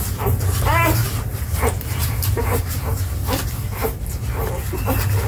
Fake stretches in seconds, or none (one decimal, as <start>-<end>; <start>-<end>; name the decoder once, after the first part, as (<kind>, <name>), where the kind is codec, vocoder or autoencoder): 1.0-2.9 (vocoder, BigVGAN v2); 3.8-4.5